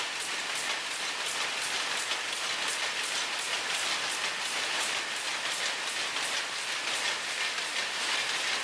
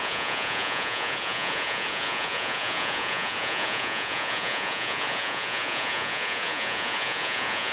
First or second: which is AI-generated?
second